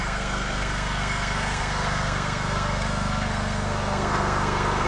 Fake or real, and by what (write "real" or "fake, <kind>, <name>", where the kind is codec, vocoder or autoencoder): fake, codec, SNAC